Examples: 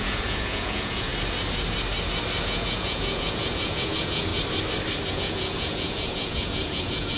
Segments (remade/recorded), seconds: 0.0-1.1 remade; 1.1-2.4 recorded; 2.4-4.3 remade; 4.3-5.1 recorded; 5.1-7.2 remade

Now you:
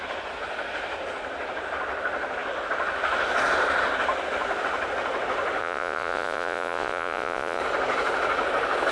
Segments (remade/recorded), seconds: 0.0-5.6 recorded; 5.6-7.6 remade; 7.6-8.9 recorded